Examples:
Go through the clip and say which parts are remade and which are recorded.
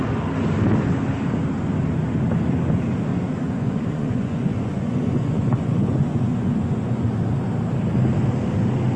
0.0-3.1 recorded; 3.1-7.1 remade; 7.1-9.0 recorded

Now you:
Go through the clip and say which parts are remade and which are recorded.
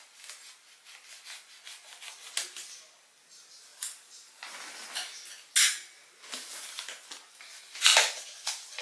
0.0-8.8 recorded